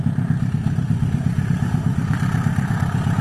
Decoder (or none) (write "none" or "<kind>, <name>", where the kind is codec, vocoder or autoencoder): vocoder, BigVGAN v2